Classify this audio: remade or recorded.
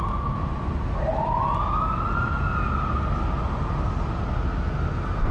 recorded